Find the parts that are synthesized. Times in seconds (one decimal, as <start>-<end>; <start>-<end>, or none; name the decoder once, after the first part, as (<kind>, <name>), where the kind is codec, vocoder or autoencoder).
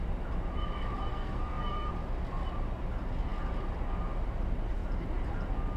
1.1-1.9 (codec, SNAC)